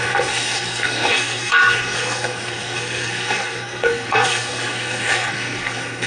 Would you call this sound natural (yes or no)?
no